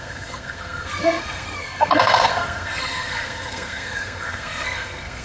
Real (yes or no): no